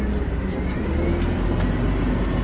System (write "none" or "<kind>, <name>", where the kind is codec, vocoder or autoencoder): none